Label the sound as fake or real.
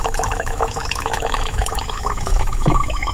fake